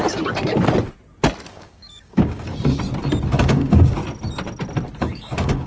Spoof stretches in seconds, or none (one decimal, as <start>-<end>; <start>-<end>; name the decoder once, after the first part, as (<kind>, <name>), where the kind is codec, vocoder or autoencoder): 1.5-2.5 (codec, DAC); 3.4-4.0; 5.0-5.7